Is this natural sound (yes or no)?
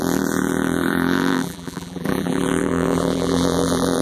no